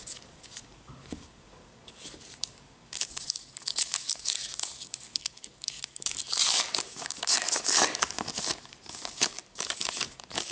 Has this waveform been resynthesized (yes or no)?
yes